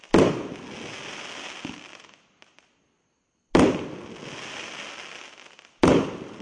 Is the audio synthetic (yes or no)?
no